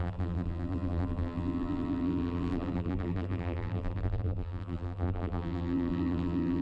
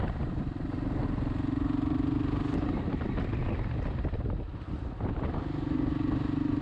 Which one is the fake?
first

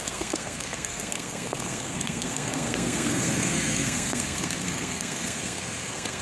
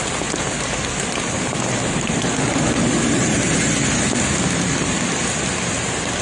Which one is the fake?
first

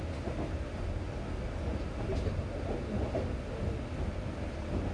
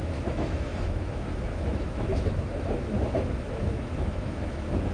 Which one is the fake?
second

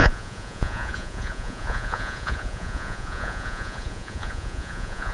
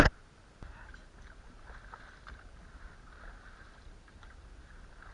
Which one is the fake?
first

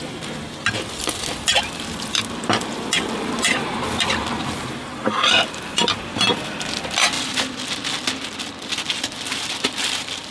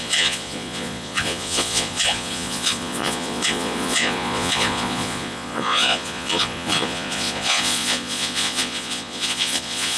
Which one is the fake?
second